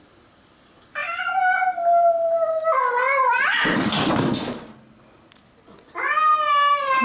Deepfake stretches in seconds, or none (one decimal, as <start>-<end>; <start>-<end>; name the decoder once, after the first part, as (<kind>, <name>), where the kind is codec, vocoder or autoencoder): none